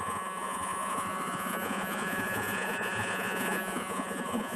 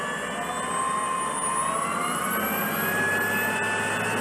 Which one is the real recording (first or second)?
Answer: second